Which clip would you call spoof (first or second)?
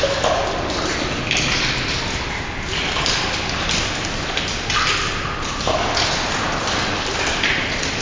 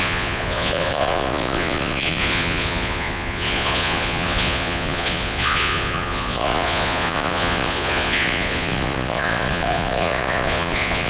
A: second